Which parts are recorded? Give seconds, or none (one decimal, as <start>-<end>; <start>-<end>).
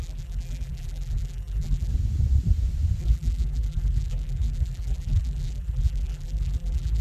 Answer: 1.9-3.0